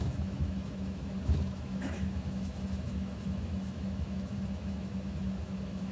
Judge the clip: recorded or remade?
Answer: remade